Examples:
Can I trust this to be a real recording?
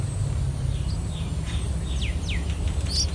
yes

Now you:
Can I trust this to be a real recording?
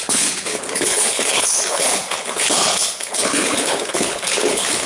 no